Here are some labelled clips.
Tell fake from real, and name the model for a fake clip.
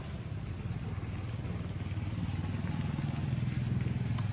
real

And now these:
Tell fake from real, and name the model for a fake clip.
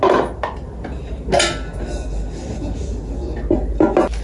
real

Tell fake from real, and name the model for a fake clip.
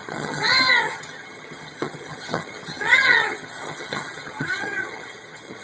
fake, vocoder, HiFi-GAN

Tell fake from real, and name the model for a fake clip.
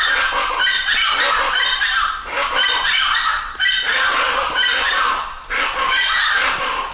real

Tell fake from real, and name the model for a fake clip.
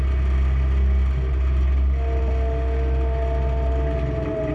real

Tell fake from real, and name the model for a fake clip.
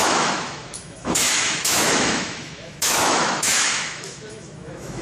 fake, autoencoder, DAC-VAE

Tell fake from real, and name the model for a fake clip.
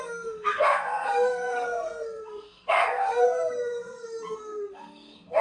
fake, codec, SNAC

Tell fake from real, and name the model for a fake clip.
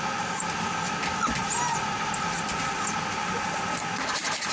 real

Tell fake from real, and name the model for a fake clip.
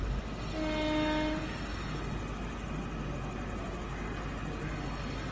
real